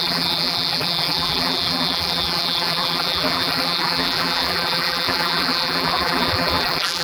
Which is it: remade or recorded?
remade